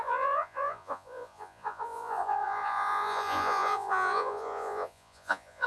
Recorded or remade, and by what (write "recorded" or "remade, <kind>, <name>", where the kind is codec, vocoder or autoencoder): remade, vocoder, Vocos